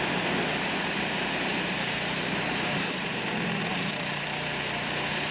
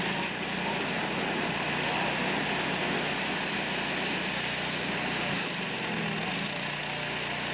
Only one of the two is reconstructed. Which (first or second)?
first